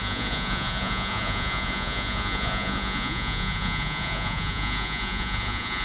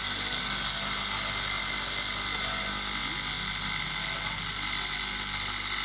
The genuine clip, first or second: second